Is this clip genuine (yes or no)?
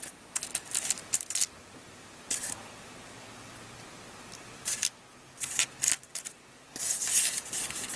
yes